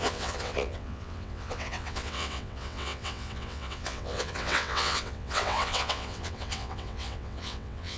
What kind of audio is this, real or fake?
fake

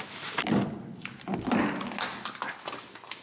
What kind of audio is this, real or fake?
real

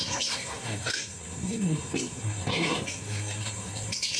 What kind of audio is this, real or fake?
fake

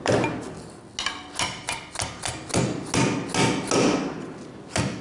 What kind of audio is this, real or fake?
real